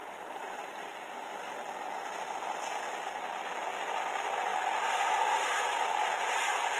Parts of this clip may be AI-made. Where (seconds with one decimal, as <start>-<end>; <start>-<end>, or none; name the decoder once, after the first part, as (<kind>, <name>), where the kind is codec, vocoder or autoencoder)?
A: none